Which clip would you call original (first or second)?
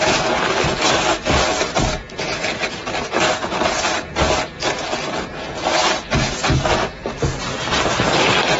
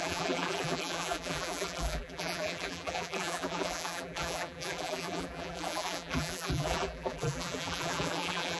first